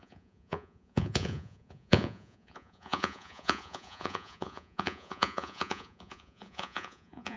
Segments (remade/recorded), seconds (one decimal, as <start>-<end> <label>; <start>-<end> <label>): 0.0-7.4 remade